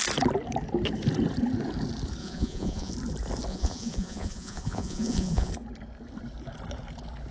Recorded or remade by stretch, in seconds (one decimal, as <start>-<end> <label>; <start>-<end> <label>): 0.0-2.2 recorded; 2.2-2.9 remade; 2.9-3.5 recorded; 3.5-5.5 remade; 5.5-7.3 recorded